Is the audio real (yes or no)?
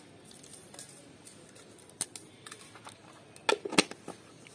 yes